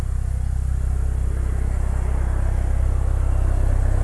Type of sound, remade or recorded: recorded